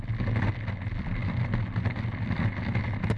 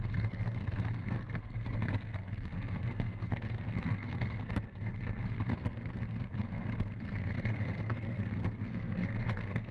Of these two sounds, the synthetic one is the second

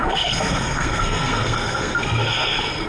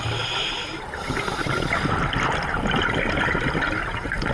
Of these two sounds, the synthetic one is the first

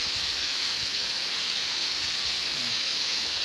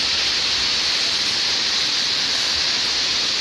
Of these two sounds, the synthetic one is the first